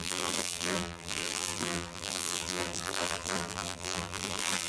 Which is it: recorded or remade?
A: remade